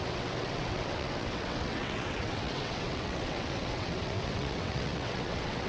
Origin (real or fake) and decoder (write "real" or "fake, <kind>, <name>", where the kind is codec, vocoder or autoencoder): fake, vocoder, WaveNeXt